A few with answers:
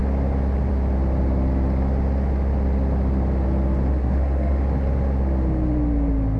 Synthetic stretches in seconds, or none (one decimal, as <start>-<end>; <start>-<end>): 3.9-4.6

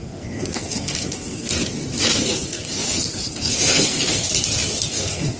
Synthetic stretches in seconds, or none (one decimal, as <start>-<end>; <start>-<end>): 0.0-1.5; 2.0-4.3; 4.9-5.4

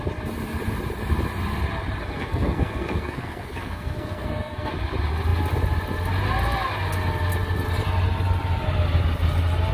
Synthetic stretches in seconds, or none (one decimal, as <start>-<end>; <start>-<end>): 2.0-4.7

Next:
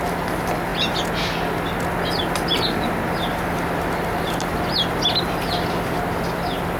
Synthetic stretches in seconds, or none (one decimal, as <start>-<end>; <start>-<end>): none